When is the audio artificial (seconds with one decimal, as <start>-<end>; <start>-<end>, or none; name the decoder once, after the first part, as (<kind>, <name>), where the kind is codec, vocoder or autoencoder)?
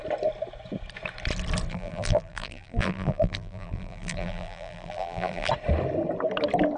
1.7-5.5 (vocoder, BigVGAN v2)